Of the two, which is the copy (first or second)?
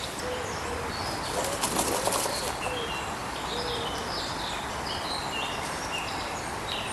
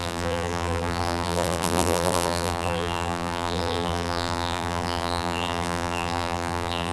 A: second